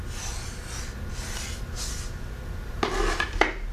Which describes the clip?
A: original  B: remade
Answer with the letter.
A